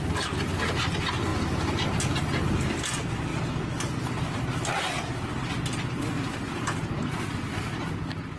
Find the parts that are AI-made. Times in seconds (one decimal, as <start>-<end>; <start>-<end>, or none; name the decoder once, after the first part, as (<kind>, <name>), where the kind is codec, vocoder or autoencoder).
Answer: 0.0-1.3 (vocoder, BigVGAN v2); 2.5-3.3; 4.2-8.4